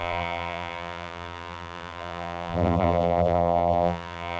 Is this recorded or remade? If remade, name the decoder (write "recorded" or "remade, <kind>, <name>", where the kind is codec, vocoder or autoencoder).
remade, vocoder, BigVGAN v2